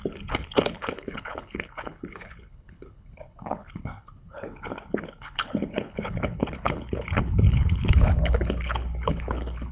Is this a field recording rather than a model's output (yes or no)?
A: no